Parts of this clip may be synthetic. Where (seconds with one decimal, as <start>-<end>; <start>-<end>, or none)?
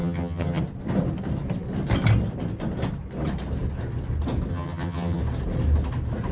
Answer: 0.0-0.6; 4.5-5.2